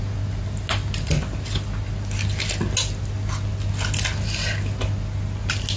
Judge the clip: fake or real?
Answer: real